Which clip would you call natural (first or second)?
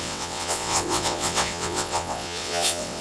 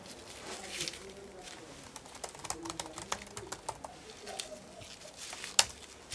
second